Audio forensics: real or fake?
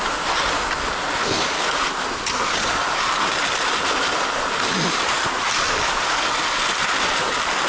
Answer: real